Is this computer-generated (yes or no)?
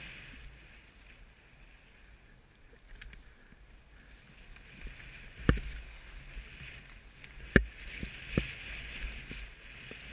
no